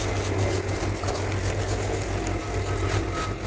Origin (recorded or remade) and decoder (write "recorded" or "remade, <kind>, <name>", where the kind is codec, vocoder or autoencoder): recorded